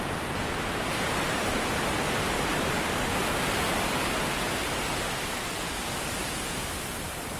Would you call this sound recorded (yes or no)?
yes